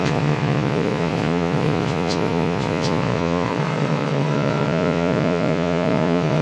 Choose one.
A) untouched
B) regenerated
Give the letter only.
B